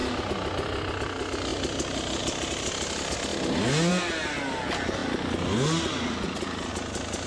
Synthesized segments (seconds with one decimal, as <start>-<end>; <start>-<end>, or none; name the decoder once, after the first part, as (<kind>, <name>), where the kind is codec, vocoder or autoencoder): none